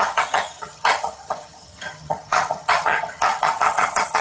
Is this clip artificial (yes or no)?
yes